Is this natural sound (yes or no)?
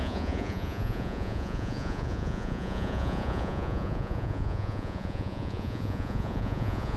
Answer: no